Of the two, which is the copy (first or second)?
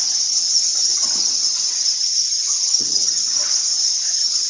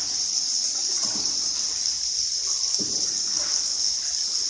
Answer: first